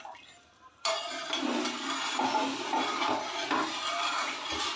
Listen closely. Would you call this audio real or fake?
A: real